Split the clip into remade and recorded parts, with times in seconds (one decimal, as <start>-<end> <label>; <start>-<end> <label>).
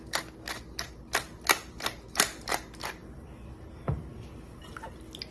0.0-5.3 recorded